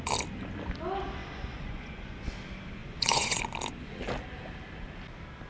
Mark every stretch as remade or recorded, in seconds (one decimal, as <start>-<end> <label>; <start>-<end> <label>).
0.0-1.2 recorded; 1.2-2.3 remade; 2.3-2.8 recorded; 2.8-3.4 remade; 3.4-5.5 recorded